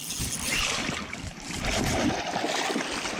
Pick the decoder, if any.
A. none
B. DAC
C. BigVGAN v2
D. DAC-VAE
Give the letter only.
C